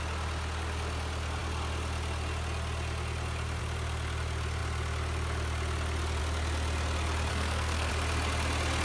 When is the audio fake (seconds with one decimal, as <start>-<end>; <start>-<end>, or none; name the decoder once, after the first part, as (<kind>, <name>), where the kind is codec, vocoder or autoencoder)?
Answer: 7.3-7.9 (codec, SNAC)